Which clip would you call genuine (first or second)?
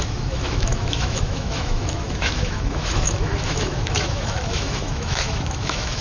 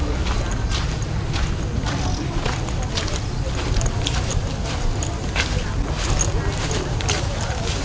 second